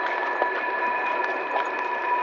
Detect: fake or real real